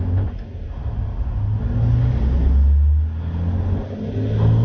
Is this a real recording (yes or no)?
yes